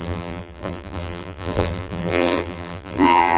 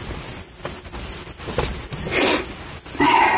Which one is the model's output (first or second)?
first